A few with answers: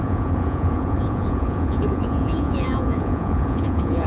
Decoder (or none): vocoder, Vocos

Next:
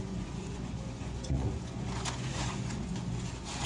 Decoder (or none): vocoder, Vocos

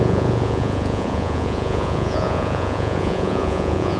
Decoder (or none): vocoder, Vocos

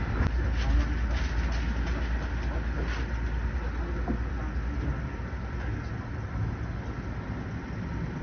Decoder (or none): none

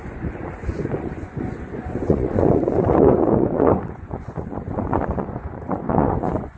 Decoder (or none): vocoder, Vocos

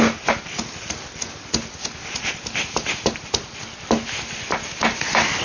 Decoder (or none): none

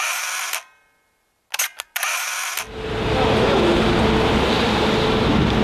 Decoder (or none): none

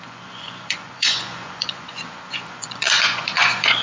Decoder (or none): vocoder, Vocos